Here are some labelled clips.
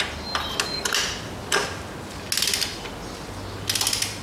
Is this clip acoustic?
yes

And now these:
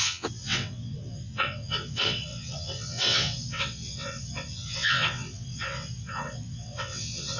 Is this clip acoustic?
no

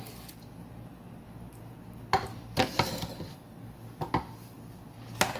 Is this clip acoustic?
yes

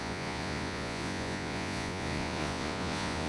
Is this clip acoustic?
no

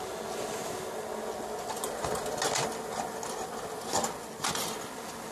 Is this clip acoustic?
yes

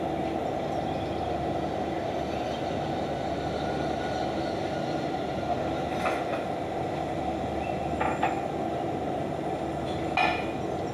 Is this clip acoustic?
yes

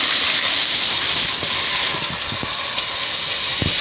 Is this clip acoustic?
yes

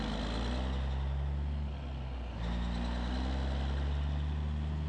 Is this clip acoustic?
yes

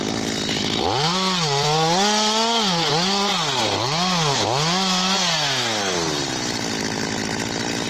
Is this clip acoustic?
yes